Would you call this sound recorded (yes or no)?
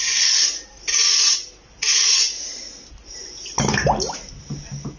yes